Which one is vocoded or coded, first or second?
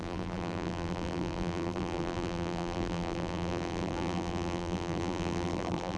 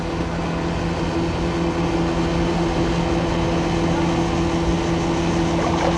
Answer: first